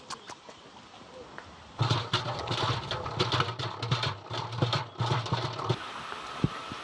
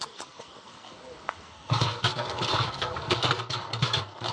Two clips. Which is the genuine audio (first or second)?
first